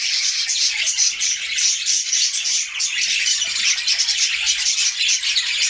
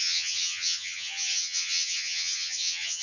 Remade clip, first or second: second